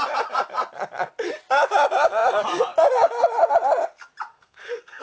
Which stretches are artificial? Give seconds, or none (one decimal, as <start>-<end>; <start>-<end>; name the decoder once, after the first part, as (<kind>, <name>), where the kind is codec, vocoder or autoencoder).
4.3-5.0 (codec, SNAC)